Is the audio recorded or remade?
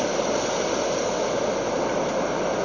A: recorded